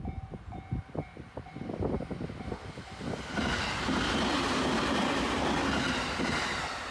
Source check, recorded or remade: recorded